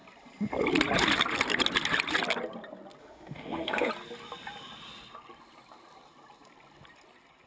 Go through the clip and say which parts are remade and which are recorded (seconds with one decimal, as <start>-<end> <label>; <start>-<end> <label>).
0.0-3.0 recorded; 3.0-3.9 remade; 3.9-7.5 recorded